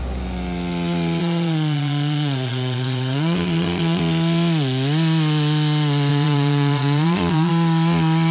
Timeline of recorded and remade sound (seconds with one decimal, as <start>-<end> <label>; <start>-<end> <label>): 0.0-1.2 recorded; 1.2-4.0 remade; 4.0-6.1 recorded; 6.1-7.5 remade; 7.5-8.3 recorded